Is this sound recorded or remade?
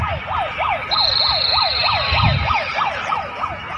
recorded